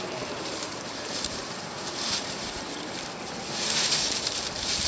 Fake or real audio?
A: fake